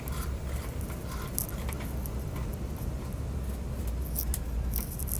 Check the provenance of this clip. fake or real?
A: real